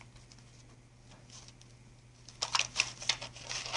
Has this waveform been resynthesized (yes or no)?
no